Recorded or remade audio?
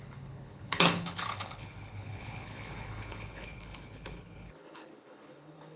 remade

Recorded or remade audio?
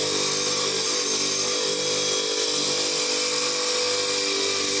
recorded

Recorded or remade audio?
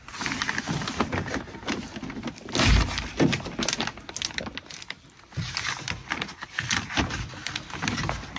recorded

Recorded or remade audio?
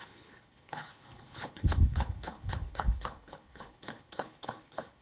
remade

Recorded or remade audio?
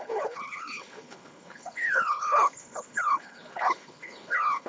remade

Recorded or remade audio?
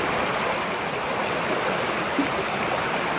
recorded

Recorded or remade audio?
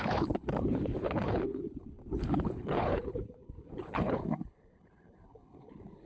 remade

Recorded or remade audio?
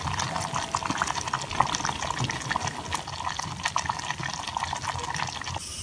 recorded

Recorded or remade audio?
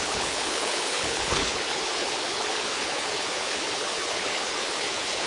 remade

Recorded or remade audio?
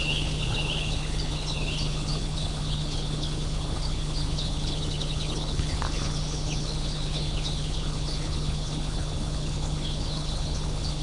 remade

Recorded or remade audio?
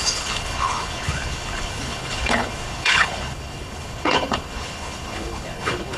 remade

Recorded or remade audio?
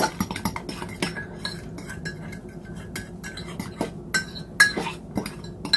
recorded